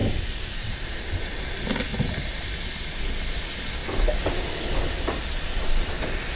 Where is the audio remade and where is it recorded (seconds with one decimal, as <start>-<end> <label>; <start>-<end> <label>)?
0.0-1.4 remade; 1.4-6.4 recorded